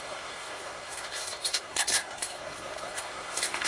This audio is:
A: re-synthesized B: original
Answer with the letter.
A